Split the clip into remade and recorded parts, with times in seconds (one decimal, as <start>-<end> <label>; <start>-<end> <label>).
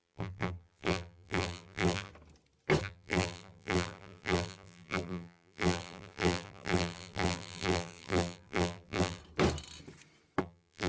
0.0-2.1 remade; 2.1-2.8 recorded; 2.8-9.2 remade; 9.2-10.4 recorded; 10.4-10.9 remade